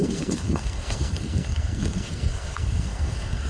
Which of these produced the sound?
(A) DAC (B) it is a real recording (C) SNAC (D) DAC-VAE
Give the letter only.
C